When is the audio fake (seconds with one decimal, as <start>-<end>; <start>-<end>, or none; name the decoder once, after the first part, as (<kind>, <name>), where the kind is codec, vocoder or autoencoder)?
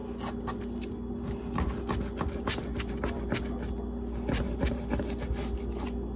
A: none